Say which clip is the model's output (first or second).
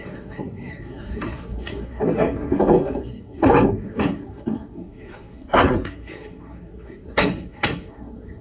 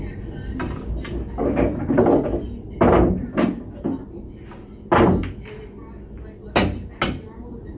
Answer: first